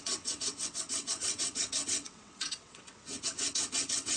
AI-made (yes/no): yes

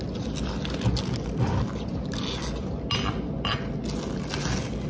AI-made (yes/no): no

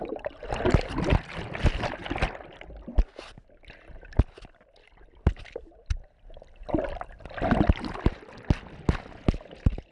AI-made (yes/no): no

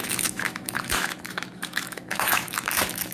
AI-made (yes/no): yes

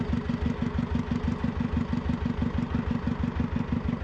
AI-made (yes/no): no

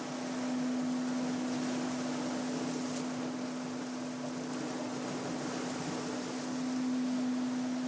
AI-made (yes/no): no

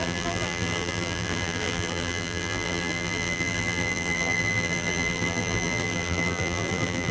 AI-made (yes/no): yes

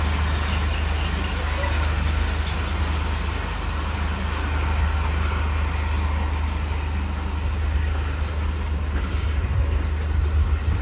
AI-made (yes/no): no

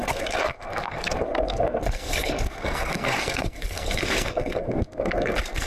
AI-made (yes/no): yes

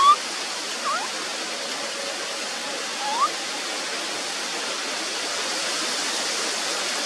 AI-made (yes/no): no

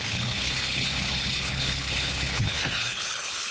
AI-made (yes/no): yes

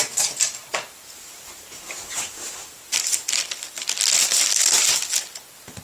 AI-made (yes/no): no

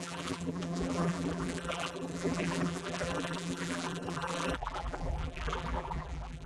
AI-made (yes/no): yes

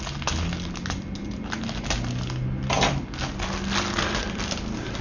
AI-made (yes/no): no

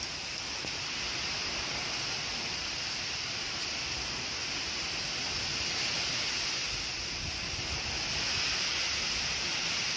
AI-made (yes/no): no